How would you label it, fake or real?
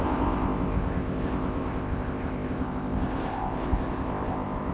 fake